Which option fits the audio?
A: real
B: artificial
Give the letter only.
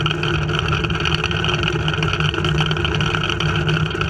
A